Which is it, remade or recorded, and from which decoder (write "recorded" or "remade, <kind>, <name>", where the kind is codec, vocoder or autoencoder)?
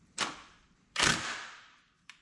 recorded